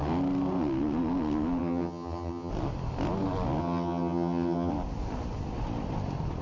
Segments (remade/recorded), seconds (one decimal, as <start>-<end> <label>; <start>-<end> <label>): 0.0-1.6 recorded; 1.6-2.5 remade; 2.5-3.6 recorded; 3.6-4.7 remade; 4.7-6.4 recorded